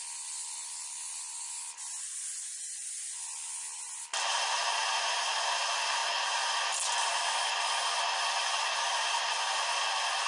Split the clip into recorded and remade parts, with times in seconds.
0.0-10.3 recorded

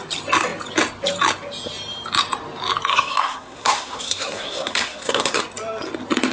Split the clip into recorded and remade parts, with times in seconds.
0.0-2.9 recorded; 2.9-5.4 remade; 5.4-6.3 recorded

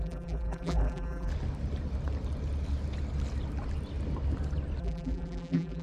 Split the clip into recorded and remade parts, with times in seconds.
0.0-1.3 remade; 1.3-4.8 recorded; 4.8-5.8 remade

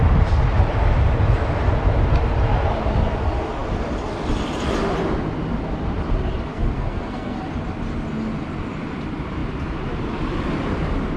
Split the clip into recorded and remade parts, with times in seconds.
0.0-6.5 recorded; 6.5-7.4 remade; 7.4-11.2 recorded